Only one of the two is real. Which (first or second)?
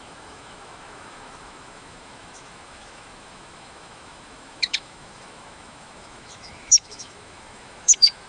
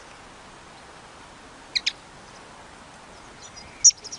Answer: second